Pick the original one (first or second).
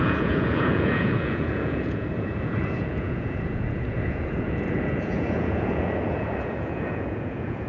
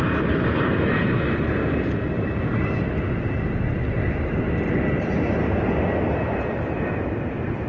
second